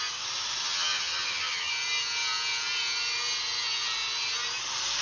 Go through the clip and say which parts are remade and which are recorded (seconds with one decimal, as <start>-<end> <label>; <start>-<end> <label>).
0.0-0.6 recorded; 0.6-1.7 remade; 1.7-5.0 recorded